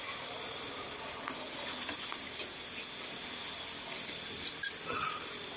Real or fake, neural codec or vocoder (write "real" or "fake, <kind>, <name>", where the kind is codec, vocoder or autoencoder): real